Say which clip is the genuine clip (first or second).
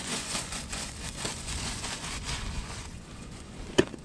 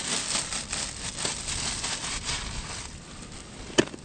second